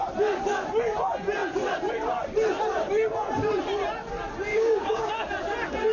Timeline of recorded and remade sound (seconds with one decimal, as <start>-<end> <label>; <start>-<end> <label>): 0.0-4.5 recorded; 4.5-5.1 remade; 5.1-5.9 recorded